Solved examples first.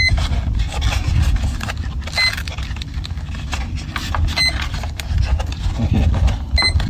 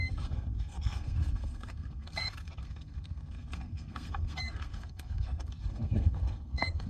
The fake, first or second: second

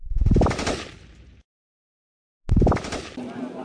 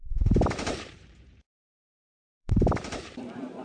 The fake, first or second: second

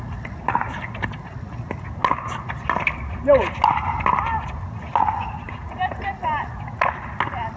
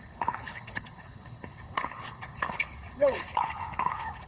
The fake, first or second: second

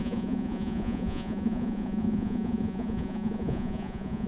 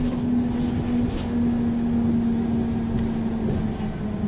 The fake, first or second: first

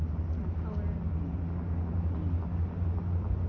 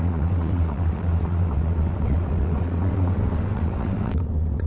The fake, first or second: second